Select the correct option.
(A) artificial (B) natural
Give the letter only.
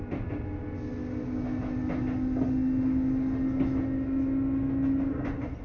B